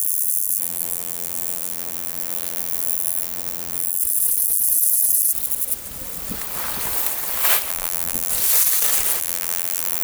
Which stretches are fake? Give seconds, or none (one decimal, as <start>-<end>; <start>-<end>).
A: 0.0-4.0; 7.7-8.3; 9.2-10.0